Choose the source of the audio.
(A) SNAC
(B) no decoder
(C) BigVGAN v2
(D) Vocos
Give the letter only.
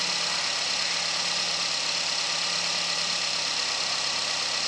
C